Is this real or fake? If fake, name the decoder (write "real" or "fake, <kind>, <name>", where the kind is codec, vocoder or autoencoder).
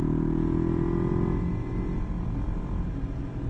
real